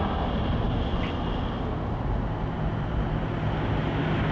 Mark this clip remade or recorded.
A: recorded